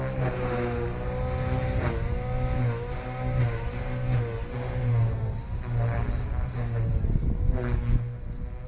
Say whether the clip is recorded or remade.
recorded